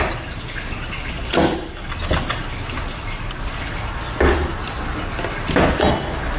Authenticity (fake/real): real